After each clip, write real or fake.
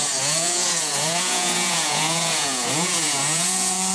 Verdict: fake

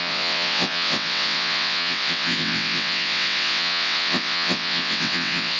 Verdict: fake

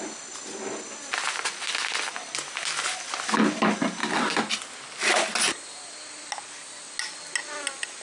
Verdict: real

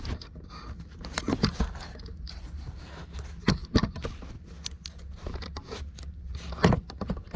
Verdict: real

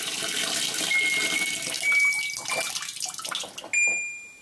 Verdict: real